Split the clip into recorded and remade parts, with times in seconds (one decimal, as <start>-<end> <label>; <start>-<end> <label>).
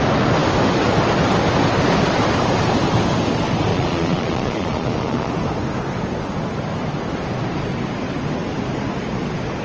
0.0-3.7 recorded; 3.7-5.3 remade; 5.3-9.6 recorded